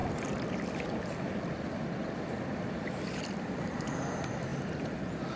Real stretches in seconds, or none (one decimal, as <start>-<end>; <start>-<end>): 0.0-3.2; 4.5-5.0